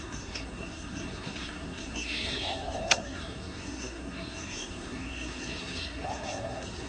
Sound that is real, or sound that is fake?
fake